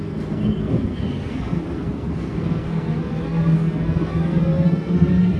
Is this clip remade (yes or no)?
yes